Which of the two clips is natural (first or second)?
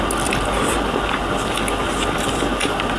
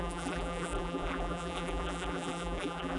first